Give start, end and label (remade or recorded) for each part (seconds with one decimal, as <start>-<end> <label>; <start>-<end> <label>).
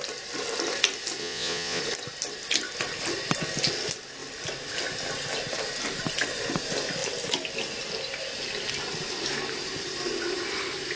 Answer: 0.0-1.2 recorded; 1.2-1.8 remade; 1.8-11.0 recorded